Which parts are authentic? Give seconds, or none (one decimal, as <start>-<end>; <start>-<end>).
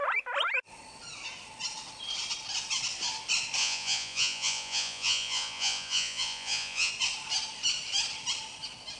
0.0-3.6; 6.9-9.0